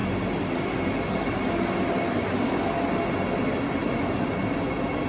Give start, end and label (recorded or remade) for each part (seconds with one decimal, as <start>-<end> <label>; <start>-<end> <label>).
0.0-5.1 recorded